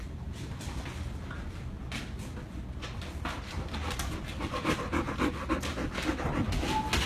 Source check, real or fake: real